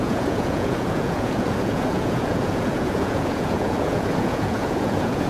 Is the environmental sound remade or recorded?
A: remade